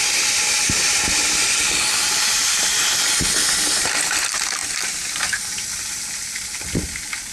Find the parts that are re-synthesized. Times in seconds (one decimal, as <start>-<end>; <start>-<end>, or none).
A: none